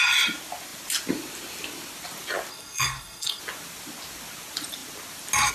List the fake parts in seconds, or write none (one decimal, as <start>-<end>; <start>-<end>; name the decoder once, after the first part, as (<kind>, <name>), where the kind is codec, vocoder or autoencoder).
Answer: 2.5-3.4 (codec, SNAC)